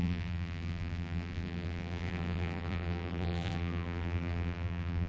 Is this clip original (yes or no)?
no